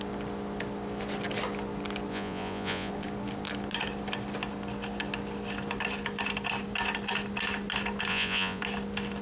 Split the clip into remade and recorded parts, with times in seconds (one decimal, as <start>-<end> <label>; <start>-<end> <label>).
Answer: 0.0-2.1 recorded; 2.1-2.9 remade; 2.9-8.1 recorded; 8.1-8.6 remade; 8.6-9.2 recorded